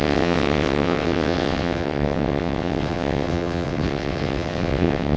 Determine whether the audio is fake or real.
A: fake